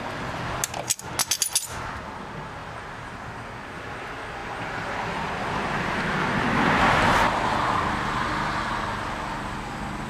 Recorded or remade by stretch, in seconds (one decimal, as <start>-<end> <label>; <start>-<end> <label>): 0.0-10.1 recorded